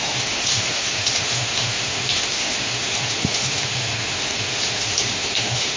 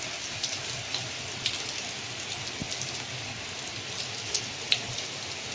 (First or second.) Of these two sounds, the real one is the second